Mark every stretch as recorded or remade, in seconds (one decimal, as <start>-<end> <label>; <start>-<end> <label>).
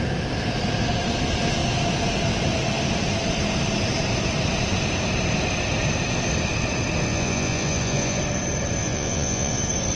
0.0-7.1 recorded; 7.1-8.2 remade; 8.2-8.8 recorded; 8.8-9.6 remade; 9.6-10.0 recorded